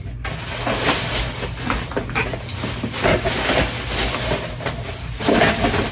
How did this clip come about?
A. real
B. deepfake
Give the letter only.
A